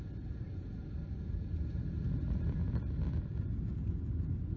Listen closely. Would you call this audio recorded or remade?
recorded